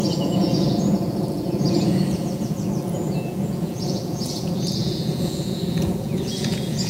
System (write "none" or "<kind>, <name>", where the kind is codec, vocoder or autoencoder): vocoder, Vocos